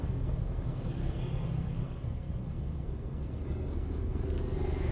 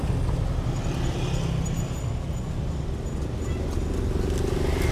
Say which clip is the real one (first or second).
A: second